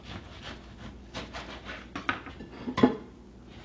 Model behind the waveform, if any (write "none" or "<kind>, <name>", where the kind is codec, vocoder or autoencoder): none